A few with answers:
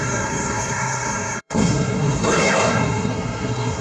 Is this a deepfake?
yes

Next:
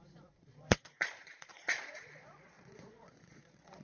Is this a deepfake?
yes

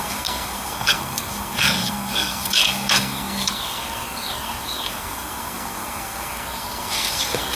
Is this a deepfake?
yes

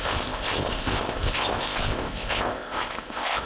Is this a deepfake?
yes